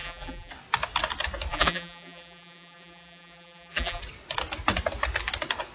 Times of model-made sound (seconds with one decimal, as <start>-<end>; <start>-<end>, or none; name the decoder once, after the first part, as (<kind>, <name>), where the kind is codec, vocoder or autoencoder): 0.0-0.5 (vocoder, BigVGAN v2); 1.5-4.0

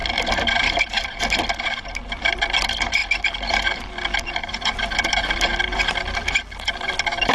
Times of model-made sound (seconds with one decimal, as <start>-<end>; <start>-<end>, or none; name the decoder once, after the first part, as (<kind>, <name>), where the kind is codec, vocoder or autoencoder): 0.0-1.0 (vocoder, BigVGAN v2)

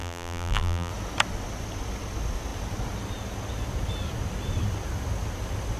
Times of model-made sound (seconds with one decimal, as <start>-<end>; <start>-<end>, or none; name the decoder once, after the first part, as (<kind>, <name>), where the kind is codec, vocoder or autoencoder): 0.0-0.9 (vocoder, BigVGAN v2)

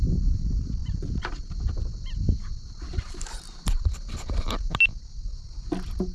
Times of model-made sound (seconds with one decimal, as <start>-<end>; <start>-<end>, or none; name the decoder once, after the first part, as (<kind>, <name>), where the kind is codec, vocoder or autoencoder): 0.8-4.5 (vocoder, BigVGAN v2)

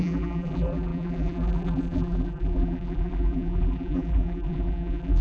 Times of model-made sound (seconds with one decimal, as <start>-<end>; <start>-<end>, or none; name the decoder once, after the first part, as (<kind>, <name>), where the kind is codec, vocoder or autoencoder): 0.0-5.2 (vocoder, BigVGAN v2)

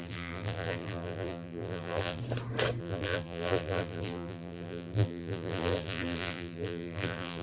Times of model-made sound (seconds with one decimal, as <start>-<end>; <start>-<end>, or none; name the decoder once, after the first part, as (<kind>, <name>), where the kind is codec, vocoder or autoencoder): 0.0-2.2 (vocoder, BigVGAN v2); 2.8-7.4

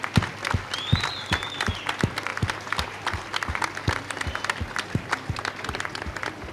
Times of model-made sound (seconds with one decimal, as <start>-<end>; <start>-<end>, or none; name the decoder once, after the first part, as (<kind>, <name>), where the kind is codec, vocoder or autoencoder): none

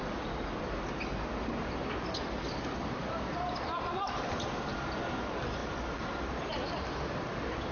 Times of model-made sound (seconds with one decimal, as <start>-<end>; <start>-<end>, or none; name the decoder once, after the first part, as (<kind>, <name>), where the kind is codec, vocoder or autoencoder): none